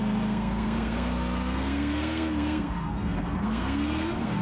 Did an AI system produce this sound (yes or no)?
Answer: yes